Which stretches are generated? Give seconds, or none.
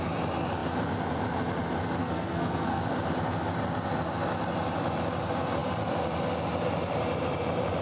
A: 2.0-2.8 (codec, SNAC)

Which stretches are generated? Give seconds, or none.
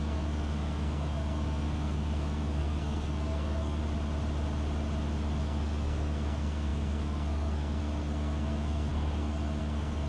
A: 0.0-3.8 (codec, SNAC); 5.4-10.1